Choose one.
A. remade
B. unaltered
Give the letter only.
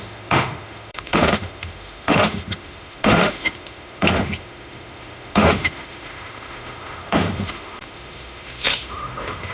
A